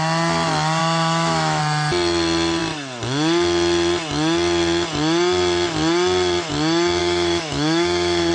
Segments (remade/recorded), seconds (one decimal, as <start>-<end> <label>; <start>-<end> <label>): 0.0-0.8 recorded; 0.8-1.6 remade; 1.6-7.0 recorded; 7.0-8.3 remade